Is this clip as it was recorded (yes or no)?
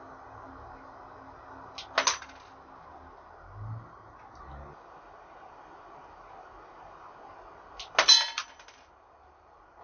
yes